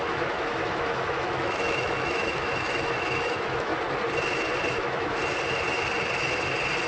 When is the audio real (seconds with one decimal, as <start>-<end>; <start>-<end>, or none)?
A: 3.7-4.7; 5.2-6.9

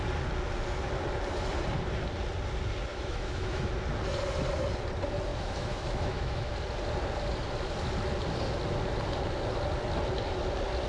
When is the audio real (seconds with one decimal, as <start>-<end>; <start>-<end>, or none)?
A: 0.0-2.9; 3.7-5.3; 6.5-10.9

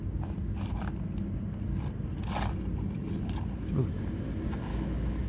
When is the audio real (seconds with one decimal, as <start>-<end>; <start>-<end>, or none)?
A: 0.0-4.7

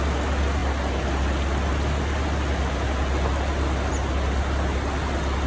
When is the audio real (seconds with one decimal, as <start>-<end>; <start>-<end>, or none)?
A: 0.0-5.5

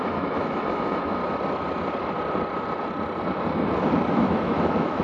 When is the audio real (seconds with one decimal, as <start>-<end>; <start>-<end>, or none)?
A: 1.2-4.1

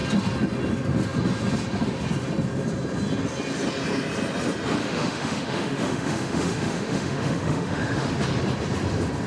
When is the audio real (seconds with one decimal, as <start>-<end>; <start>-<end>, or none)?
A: 0.0-4.8; 8.1-9.3

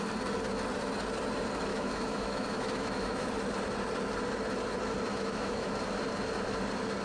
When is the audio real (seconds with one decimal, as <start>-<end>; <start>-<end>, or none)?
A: 0.0-1.7; 3.3-5.1; 5.7-7.0

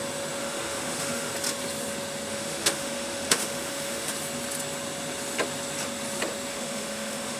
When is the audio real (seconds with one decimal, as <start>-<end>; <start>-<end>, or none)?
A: 0.0-0.4; 1.3-2.3; 4.1-6.5